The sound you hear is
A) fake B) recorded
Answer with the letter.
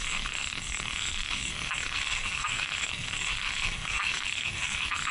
A